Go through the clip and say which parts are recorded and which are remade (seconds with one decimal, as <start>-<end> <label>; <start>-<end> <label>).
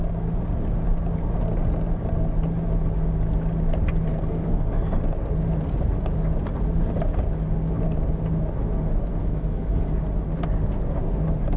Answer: 0.0-4.1 recorded; 4.1-4.9 remade; 4.9-9.1 recorded; 9.1-10.0 remade; 10.0-11.6 recorded